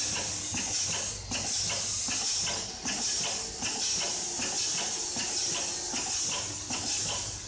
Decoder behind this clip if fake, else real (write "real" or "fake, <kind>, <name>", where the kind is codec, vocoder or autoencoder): real